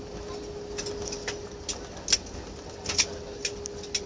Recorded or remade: recorded